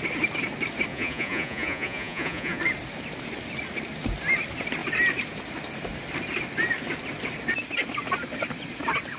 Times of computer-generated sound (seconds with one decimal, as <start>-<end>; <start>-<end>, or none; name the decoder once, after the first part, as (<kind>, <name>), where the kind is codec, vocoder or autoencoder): 0.9-2.6 (vocoder, Vocos)